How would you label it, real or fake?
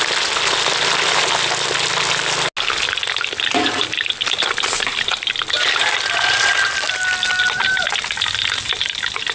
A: real